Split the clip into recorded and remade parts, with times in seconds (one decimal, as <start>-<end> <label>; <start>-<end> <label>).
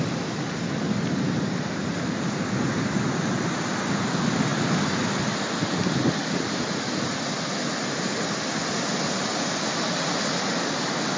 0.0-11.2 recorded